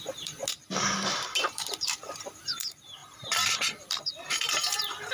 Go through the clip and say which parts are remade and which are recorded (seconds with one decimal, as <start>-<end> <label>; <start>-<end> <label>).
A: 0.0-0.4 remade; 0.4-1.0 recorded; 1.0-3.0 remade; 3.0-3.9 recorded; 3.9-5.1 remade